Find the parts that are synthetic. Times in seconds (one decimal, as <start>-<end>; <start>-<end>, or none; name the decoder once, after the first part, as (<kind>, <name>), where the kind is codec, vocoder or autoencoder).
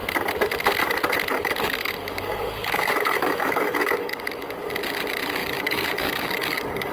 1.3-4.5 (codec, DAC); 5.4-6.9